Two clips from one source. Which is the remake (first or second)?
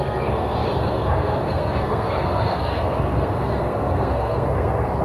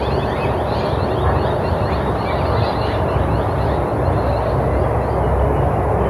first